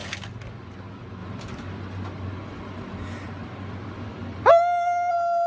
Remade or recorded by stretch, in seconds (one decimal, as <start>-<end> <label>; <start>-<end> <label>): 0.0-0.7 remade; 0.7-1.2 recorded; 1.2-4.5 remade; 4.5-5.5 recorded

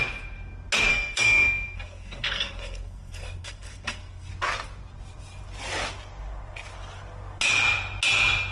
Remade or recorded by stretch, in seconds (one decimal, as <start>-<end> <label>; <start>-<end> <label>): 0.0-0.9 recorded; 0.9-4.3 remade; 4.3-8.5 recorded